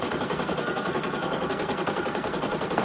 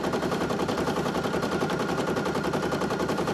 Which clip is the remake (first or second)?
first